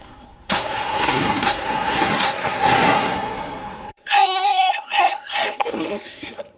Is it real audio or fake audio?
fake